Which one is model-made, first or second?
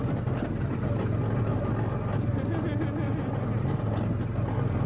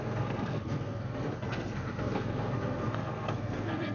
second